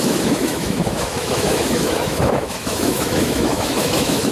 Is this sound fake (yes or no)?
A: yes